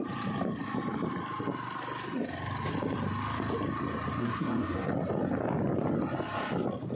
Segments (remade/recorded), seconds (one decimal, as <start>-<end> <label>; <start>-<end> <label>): 0.0-4.2 recorded; 4.2-4.9 remade; 4.9-6.9 recorded